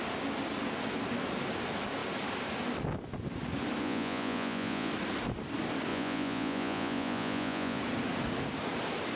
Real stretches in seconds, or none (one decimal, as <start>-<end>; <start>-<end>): 0.0-3.8; 4.9-5.9; 7.8-9.2